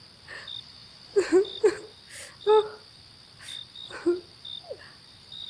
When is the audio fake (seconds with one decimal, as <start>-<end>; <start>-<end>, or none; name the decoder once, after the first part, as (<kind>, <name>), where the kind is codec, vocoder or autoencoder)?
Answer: none